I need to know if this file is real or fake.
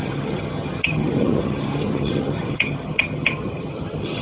fake